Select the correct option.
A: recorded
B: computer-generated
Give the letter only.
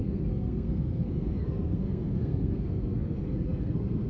B